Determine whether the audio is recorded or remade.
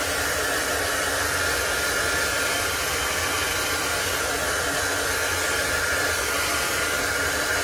recorded